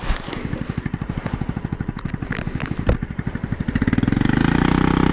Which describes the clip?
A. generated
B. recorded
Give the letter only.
A